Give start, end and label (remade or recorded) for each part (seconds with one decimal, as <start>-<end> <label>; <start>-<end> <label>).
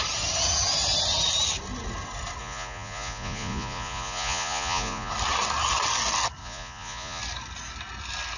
0.0-2.4 recorded; 2.4-5.1 remade; 5.1-6.4 recorded; 6.4-7.2 remade; 7.2-8.4 recorded